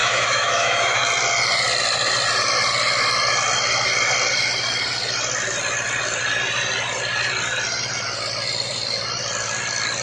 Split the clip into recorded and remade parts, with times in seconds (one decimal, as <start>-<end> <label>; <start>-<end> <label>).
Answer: 0.0-1.0 remade; 1.0-10.0 recorded